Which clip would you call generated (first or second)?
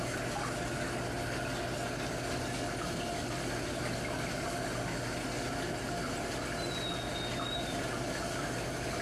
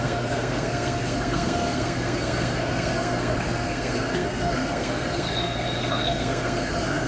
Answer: second